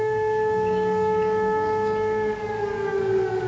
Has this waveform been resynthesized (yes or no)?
yes